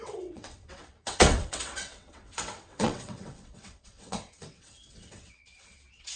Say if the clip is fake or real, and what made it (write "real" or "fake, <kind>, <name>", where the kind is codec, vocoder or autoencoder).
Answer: fake, vocoder, WaveNeXt